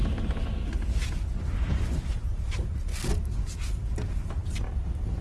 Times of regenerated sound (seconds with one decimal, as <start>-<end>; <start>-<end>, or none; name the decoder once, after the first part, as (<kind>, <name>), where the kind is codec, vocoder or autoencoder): none